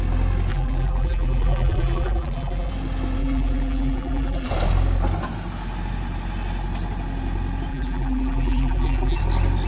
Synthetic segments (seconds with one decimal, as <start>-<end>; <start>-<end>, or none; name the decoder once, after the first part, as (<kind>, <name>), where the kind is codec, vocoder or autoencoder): 0.5-2.7 (vocoder, BigVGAN v2); 3.2-4.5; 7.7-9.2

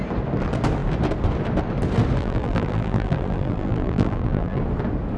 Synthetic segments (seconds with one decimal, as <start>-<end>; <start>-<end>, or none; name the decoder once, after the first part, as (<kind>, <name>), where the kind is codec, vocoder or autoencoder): 2.2-4.6 (vocoder, BigVGAN v2)

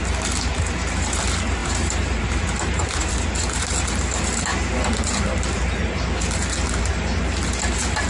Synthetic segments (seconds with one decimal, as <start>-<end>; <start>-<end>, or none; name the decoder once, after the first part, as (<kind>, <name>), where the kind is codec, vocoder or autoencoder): 0.5-1.2 (vocoder, BigVGAN v2); 1.6-3.1

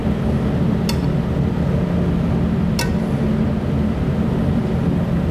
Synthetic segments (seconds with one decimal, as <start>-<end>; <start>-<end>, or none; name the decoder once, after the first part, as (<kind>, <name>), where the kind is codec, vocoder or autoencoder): none

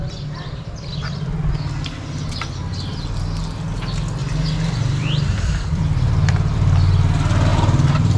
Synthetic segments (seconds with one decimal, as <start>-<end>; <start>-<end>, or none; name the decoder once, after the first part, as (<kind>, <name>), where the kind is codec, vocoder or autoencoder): 4.2-5.8 (vocoder, BigVGAN v2); 7.5-8.2

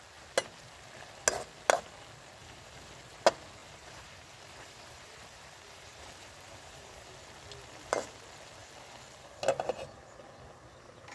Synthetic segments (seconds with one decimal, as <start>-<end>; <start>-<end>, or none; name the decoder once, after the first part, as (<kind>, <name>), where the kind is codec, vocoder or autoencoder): 2.4-2.9 (vocoder, BigVGAN v2); 3.6-7.1

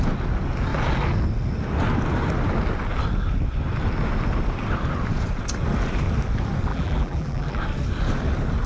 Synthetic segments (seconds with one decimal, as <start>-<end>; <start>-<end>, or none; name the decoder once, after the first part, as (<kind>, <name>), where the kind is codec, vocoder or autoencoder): 6.7-7.6 (vocoder, BigVGAN v2)

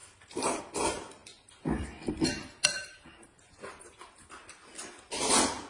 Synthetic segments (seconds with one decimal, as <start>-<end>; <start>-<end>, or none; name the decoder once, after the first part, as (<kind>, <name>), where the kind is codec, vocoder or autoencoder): 0.0-0.6 (vocoder, BigVGAN v2)